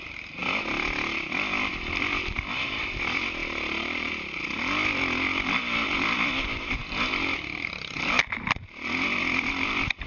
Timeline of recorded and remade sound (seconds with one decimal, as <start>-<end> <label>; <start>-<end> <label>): 0.0-0.4 remade; 0.4-1.3 recorded; 1.3-3.4 remade; 3.4-4.5 recorded; 4.5-6.8 remade; 6.8-9.5 recorded; 9.5-10.1 remade